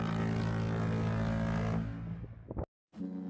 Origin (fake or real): real